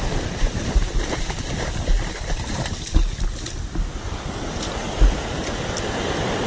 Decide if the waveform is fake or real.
real